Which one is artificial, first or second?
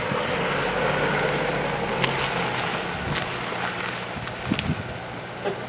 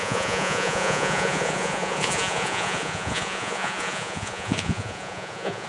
second